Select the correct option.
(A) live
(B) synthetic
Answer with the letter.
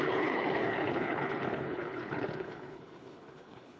B